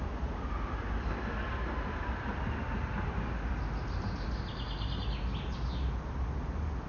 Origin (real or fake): real